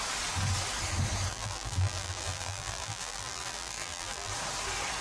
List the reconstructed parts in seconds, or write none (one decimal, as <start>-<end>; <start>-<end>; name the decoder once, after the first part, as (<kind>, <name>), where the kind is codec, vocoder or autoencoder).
1.3-4.3 (vocoder, BigVGAN v2)